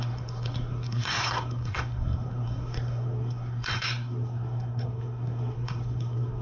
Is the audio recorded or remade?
remade